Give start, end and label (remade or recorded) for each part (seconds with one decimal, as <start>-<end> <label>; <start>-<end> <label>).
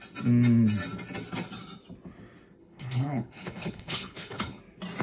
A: 0.0-2.6 recorded; 2.6-4.6 remade; 4.6-5.0 recorded